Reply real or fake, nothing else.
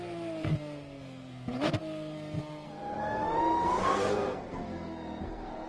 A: fake